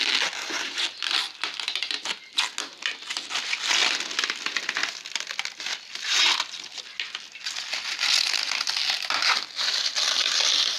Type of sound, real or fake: real